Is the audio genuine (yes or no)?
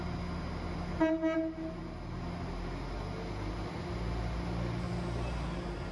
yes